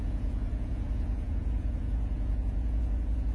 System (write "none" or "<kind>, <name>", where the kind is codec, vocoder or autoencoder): vocoder, Vocos